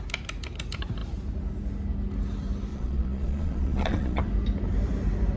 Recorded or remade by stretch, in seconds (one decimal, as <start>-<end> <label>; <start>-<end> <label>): 0.0-2.7 recorded; 2.7-4.2 remade; 4.2-5.4 recorded